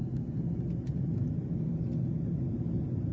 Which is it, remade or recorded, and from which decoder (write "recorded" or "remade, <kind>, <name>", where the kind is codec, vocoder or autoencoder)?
recorded